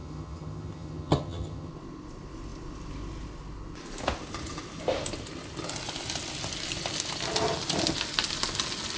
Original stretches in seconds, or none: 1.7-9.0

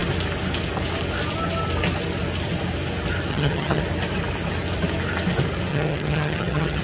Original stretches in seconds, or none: 0.0-3.3; 3.8-5.7

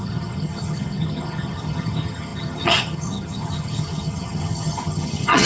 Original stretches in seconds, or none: none

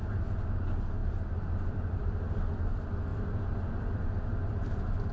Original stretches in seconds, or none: 0.0-5.1

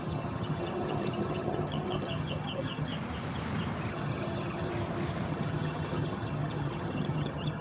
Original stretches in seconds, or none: 2.9-3.9; 4.7-5.3

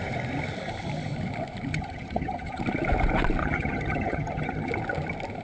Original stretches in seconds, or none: 0.0-1.7; 2.6-3.4; 4.7-5.4

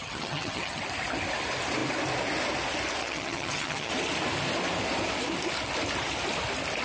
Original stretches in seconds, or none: 0.8-3.0; 3.9-6.8

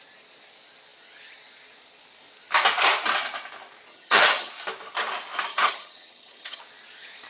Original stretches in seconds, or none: 0.0-3.9; 4.5-5.5; 6.6-7.3